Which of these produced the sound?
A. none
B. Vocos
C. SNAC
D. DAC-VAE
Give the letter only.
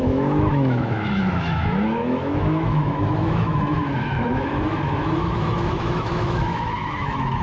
D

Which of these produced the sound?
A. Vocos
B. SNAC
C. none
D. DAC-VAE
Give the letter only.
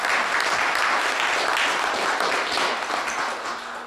C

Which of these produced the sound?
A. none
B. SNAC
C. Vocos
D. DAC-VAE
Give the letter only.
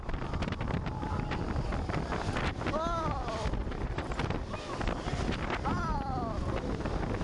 A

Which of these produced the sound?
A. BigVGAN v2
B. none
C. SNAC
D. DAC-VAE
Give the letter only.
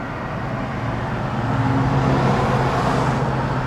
B